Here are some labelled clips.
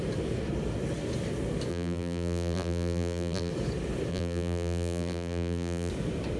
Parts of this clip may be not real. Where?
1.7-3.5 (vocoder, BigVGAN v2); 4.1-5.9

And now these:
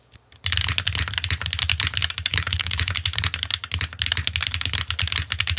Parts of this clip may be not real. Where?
2.3-2.9 (vocoder, Vocos)

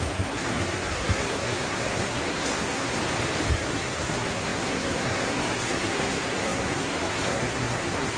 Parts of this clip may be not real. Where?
0.0-3.0 (codec, SNAC); 3.5-8.2

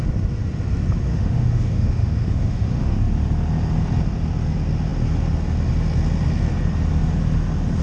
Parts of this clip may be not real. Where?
1.1-3.0 (autoencoder, DAC-VAE)

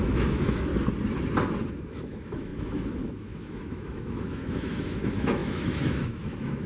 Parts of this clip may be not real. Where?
0.0-0.7 (autoencoder, DAC-VAE); 1.7-6.7

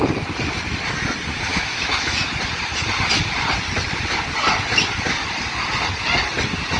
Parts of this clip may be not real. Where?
1.5-2.3 (autoencoder, DAC-VAE)

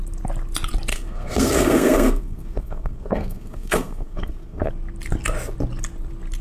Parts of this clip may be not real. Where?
0.9-4.7 (codec, SNAC)

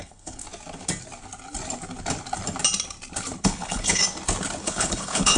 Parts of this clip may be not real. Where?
0.0-0.4 (codec, HILCodec); 3.4-4.0; 4.6-5.4